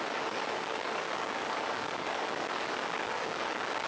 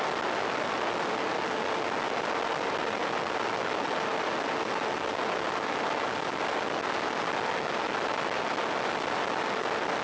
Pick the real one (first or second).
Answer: second